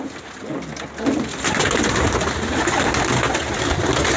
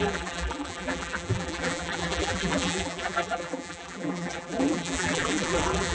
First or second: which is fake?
second